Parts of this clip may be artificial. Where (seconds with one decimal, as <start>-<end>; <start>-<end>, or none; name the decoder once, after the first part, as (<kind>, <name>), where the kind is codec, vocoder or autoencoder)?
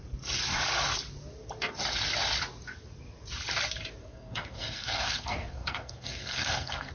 4.0-6.9 (codec, SNAC)